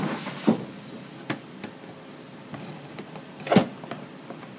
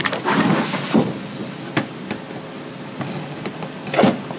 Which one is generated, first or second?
first